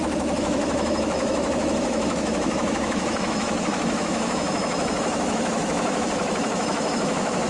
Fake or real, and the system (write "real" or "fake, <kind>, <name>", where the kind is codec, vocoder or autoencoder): fake, autoencoder, DAC-VAE